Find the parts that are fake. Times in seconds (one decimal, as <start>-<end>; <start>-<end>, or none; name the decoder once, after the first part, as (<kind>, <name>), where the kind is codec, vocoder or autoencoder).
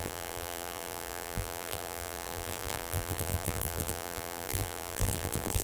0.0-5.6 (vocoder, BigVGAN v2)